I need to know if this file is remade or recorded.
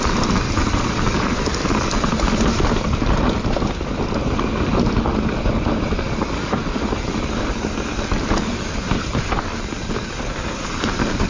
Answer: recorded